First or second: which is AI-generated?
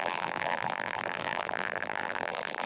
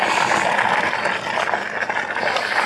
first